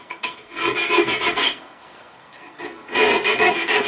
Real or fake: fake